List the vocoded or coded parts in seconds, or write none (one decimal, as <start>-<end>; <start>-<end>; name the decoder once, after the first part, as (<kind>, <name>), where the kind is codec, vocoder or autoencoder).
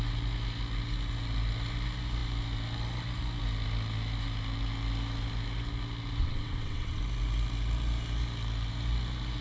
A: 6.2-7.0 (vocoder, WaveNeXt)